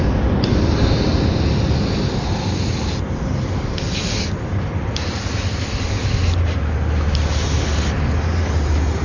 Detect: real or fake real